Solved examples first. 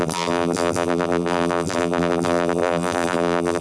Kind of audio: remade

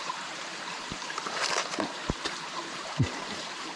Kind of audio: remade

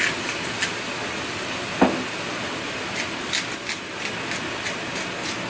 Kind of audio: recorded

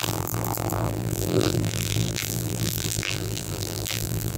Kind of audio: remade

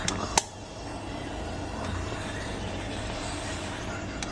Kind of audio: recorded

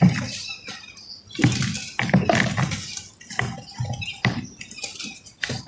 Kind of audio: recorded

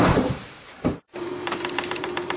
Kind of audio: remade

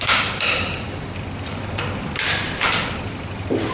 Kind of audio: remade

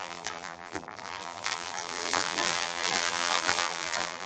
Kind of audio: remade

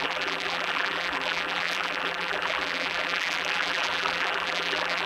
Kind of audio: remade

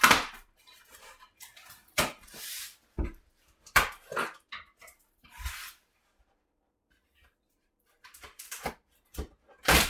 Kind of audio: remade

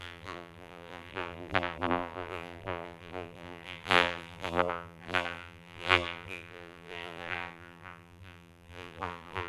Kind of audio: remade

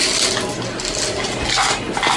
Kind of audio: recorded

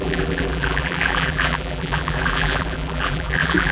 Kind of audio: remade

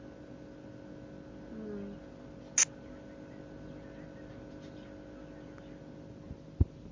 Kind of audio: recorded